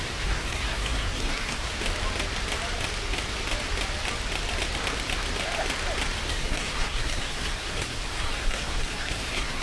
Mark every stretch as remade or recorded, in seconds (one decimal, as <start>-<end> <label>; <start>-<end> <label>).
0.0-1.7 remade; 1.7-6.3 recorded; 6.3-9.6 remade